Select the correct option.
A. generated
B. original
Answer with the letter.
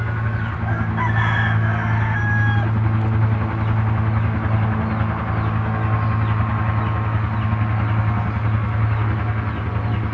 B